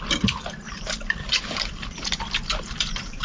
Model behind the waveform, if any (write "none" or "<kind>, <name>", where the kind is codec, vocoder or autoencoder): vocoder, BigVGAN v2